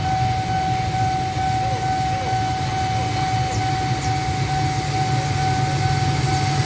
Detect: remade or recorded recorded